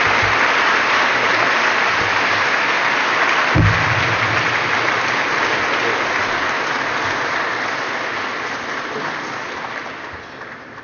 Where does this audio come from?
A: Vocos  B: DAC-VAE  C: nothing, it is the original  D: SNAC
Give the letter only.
C